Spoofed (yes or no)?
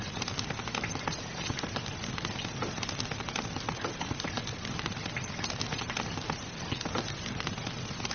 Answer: no